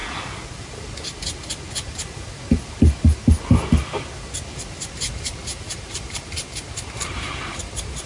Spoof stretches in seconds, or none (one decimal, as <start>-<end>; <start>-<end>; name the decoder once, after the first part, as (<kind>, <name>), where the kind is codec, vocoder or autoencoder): 4.9-8.1 (vocoder, BigVGAN v2)